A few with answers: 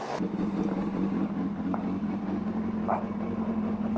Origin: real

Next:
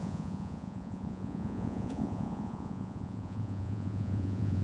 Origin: fake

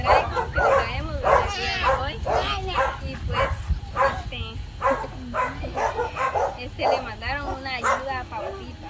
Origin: real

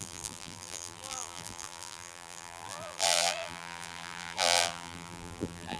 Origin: fake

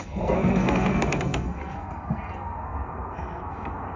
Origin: fake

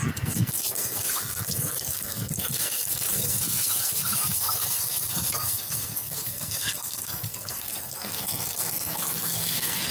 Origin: fake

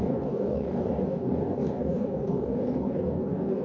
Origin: fake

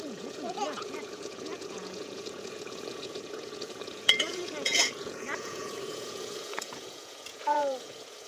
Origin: fake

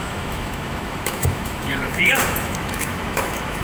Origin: fake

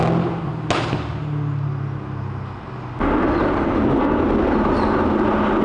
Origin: real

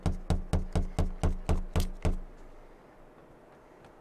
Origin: real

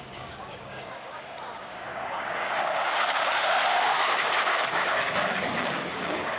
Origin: fake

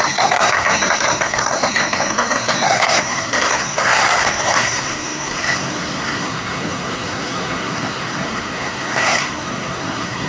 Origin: fake